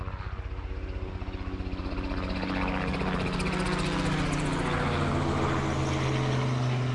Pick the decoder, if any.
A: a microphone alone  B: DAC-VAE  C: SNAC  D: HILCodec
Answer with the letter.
A